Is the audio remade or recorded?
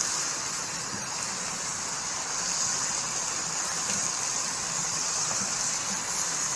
recorded